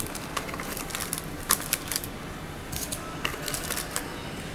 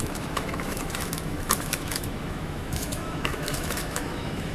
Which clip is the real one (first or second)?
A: first